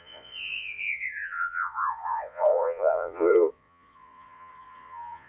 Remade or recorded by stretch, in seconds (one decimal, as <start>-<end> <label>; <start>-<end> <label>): 0.0-5.3 remade